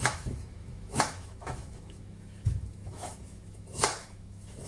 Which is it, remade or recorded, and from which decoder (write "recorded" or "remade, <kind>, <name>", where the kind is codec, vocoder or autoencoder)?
remade, autoencoder, DAC-VAE